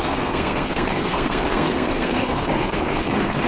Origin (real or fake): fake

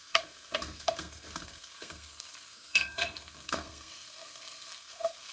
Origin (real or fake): fake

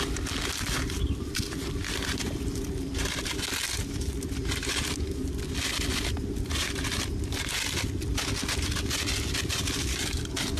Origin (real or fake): real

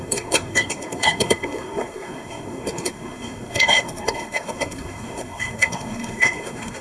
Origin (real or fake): fake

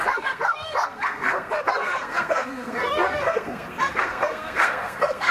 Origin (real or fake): fake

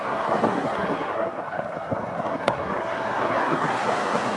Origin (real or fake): fake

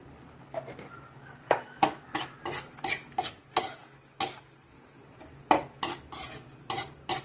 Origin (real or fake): real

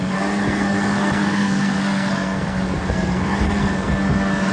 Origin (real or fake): fake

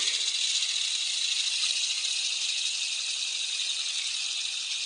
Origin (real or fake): real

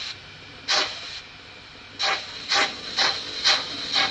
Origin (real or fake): real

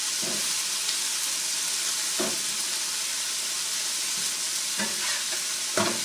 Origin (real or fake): real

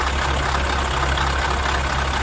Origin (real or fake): real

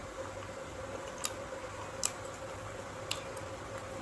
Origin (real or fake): real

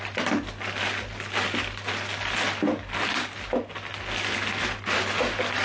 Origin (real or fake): real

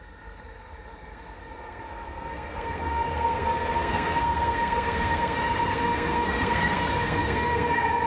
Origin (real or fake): fake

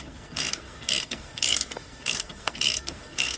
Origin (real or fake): fake